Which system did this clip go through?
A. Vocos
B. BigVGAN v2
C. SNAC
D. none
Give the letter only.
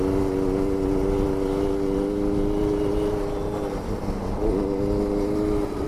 D